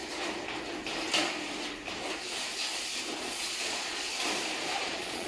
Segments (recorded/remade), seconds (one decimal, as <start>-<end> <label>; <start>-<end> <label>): 0.0-3.2 recorded; 3.2-4.1 remade; 4.1-4.8 recorded; 4.8-5.3 remade